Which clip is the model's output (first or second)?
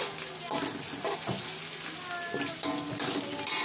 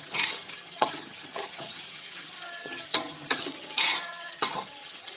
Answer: second